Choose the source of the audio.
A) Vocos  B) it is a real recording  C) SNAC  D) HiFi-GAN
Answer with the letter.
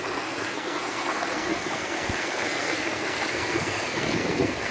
C